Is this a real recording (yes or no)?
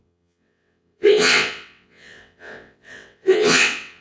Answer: no